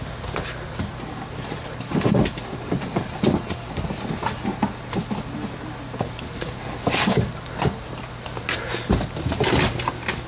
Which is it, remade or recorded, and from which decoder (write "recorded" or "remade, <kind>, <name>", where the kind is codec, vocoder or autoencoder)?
recorded